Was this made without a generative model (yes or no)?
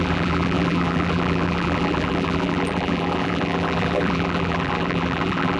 no